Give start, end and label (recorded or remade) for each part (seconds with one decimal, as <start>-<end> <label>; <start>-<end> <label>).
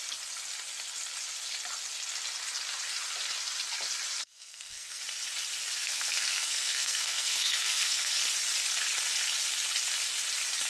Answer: 0.0-4.2 recorded; 4.2-5.0 remade; 5.0-5.8 recorded; 5.8-8.1 remade; 8.1-10.7 recorded